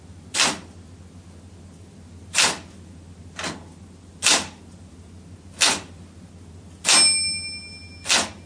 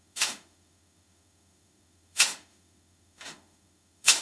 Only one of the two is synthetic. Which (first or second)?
second